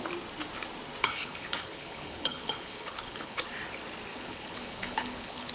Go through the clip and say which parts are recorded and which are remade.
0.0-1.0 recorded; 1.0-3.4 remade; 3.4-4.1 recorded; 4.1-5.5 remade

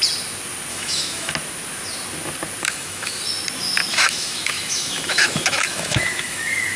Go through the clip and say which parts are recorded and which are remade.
0.0-0.7 recorded; 0.7-1.3 remade; 1.3-2.6 recorded; 2.6-3.2 remade; 3.2-3.9 recorded; 3.9-6.8 remade